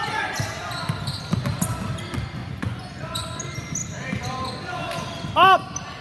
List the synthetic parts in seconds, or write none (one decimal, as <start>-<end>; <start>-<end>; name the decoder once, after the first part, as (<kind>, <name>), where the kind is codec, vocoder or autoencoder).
2.4-3.4 (vocoder, Vocos)